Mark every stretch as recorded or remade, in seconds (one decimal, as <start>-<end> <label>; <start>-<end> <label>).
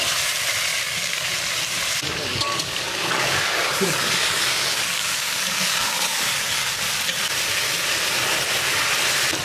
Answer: 0.0-0.7 recorded; 0.7-1.3 remade; 1.3-2.3 recorded; 2.3-6.8 remade; 6.8-9.4 recorded